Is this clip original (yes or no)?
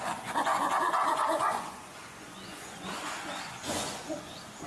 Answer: no